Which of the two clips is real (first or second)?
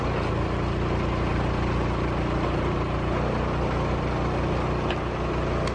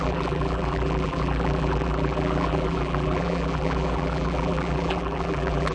first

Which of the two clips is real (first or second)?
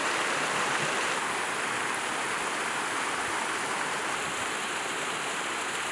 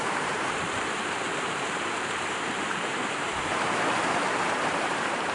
first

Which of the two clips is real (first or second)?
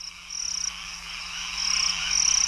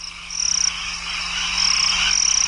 second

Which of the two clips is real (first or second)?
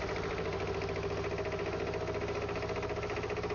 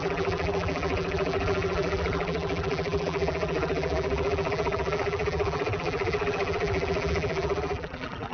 first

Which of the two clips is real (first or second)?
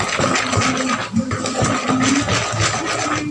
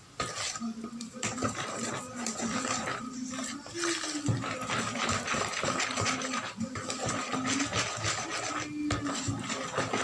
first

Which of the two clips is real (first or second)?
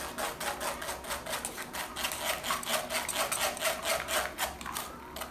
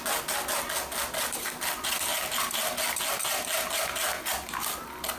first